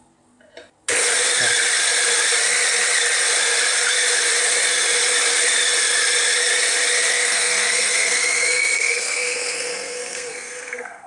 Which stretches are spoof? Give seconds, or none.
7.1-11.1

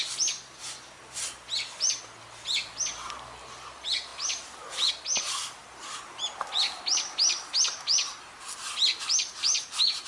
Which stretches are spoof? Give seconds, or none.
none

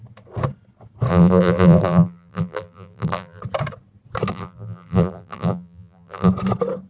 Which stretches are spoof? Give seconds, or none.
1.1-3.4; 4.3-6.3

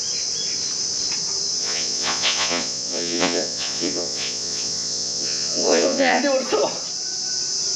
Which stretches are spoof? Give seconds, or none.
1.6-6.2

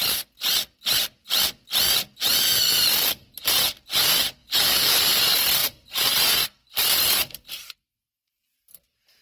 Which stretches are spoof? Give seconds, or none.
4.4-5.0

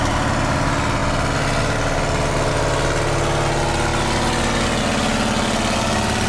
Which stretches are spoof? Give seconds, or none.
none

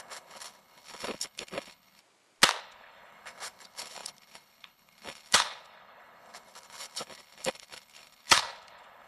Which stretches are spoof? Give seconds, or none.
0.0-2.0; 2.6-9.1

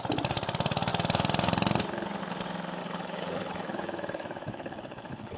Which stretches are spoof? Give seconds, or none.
2.8-5.4